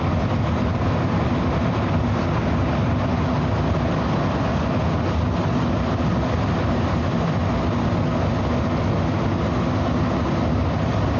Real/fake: real